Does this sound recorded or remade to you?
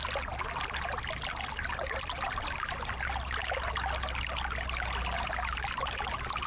recorded